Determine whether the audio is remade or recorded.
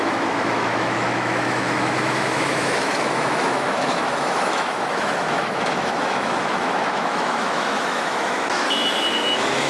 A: remade